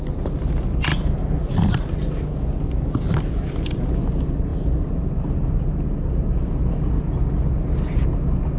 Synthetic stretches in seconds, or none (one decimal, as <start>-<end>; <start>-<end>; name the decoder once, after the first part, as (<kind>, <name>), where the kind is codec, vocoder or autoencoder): none